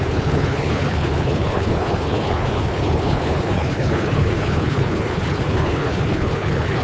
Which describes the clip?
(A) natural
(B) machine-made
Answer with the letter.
B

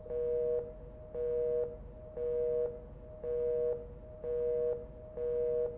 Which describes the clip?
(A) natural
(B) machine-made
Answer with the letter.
A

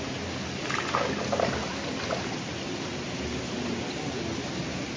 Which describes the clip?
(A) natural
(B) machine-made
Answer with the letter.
A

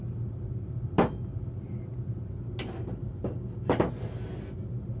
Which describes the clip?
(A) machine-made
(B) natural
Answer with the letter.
B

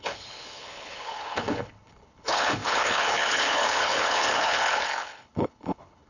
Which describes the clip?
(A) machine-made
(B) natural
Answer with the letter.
A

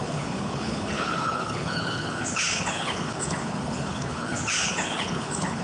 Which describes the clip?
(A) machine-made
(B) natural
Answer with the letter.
A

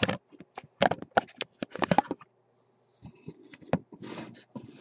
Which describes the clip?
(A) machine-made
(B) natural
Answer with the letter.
B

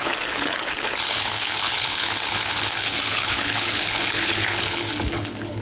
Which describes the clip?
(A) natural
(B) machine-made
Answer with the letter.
B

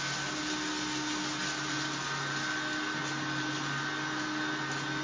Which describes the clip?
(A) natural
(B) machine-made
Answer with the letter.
A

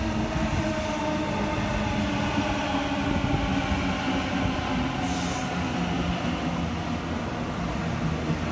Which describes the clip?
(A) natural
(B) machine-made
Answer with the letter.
A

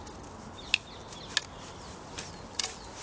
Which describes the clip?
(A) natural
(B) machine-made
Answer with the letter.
A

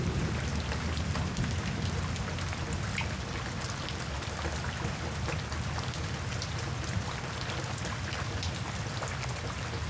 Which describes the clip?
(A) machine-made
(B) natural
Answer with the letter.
B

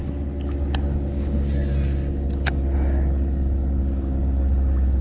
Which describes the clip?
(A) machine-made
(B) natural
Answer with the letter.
B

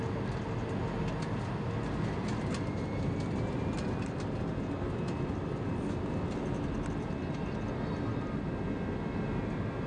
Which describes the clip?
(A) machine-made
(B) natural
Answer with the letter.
B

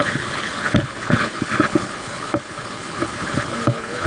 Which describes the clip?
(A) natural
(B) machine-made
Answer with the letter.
B